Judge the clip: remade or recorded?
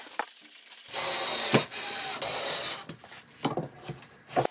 recorded